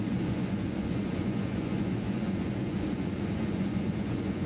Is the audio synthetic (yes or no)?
yes